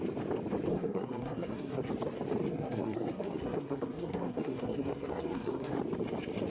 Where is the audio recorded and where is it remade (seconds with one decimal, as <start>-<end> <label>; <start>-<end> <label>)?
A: 0.0-0.7 recorded; 0.7-1.9 remade; 1.9-2.5 recorded; 2.5-5.7 remade; 5.7-6.5 recorded